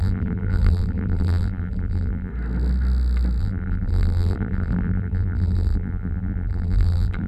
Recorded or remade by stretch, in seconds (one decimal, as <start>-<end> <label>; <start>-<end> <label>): 0.0-2.3 remade; 2.3-3.4 recorded; 3.4-7.3 remade